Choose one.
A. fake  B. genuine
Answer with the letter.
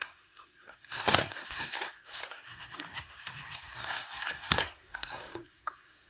A